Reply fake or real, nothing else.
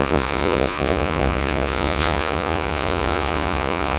fake